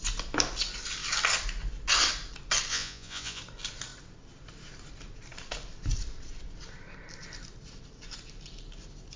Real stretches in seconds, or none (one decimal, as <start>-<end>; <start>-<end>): 0.0-2.7; 3.4-9.2